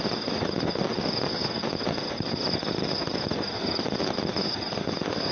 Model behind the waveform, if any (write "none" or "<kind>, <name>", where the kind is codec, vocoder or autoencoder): none